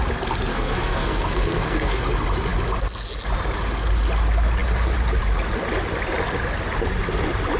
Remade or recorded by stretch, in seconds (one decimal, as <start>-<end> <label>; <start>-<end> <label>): 0.0-0.5 recorded; 0.5-2.0 remade; 2.0-7.6 recorded